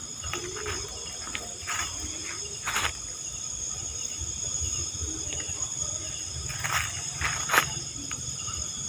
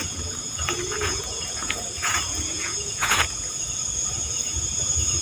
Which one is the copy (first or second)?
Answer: second